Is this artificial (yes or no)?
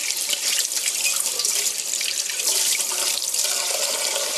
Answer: yes